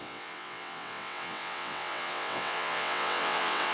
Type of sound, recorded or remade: remade